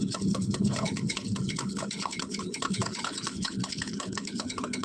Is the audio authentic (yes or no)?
no